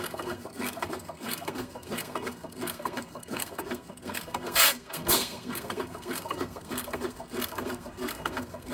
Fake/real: fake